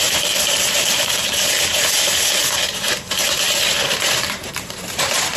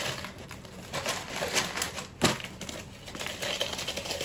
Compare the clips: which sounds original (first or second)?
second